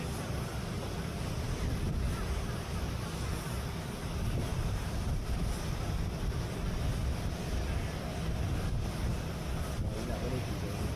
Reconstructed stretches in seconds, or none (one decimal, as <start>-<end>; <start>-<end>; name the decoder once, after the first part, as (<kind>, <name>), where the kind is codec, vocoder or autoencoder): 4.5-5.1 (vocoder, BigVGAN v2)